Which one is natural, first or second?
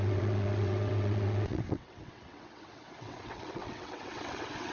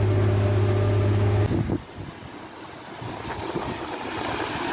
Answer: second